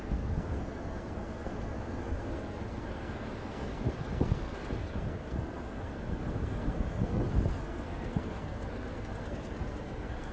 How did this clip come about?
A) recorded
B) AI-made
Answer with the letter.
B